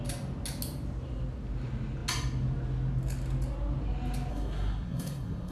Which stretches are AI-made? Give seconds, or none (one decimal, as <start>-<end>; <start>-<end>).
4.3-5.5